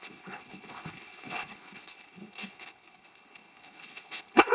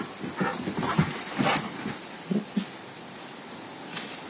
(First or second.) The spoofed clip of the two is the first